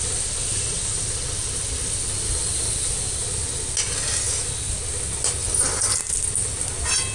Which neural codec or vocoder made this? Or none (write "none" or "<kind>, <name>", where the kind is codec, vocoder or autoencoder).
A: none